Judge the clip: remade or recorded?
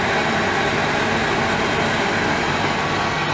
recorded